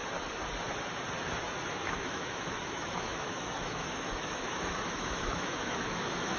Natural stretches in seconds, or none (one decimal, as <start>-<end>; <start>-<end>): 0.0-1.7